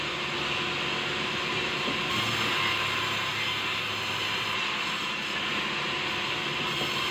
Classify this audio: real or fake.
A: real